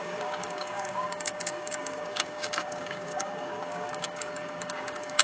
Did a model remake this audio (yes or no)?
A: yes